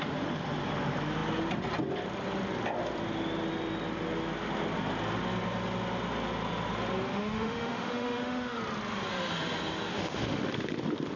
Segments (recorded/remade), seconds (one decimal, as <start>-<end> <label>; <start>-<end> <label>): 0.0-7.1 recorded; 7.1-8.6 remade; 8.6-9.9 recorded; 9.9-10.5 remade; 10.5-11.2 recorded